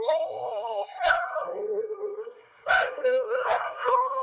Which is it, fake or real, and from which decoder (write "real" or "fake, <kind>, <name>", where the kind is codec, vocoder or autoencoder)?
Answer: fake, codec, SNAC